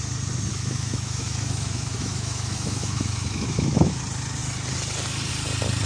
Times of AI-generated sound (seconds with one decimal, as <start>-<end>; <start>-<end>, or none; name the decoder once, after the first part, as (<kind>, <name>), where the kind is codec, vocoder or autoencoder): 0.5-4.0 (autoencoder, DAC-VAE)